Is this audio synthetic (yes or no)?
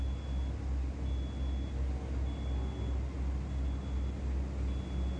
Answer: no